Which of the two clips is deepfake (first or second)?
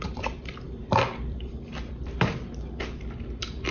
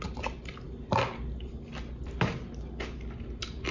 first